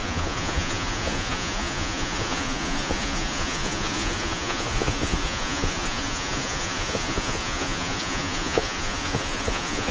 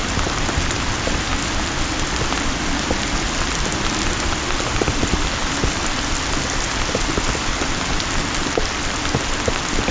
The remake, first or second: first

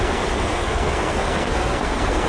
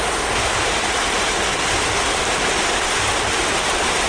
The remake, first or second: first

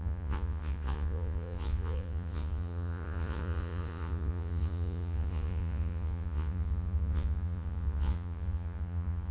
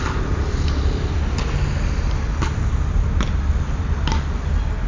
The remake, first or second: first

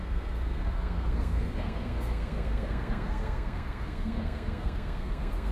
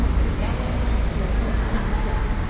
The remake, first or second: first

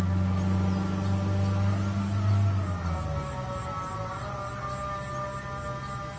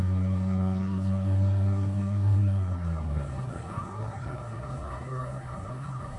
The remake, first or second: second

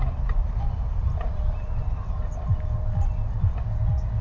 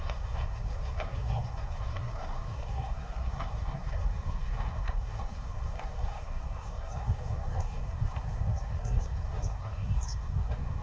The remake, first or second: second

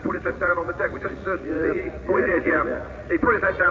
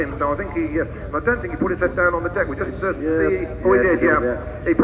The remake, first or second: first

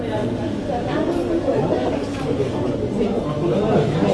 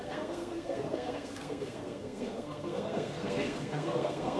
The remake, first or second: second